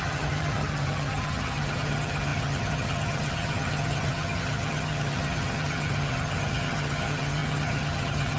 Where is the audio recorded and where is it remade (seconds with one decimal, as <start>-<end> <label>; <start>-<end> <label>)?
0.0-8.4 remade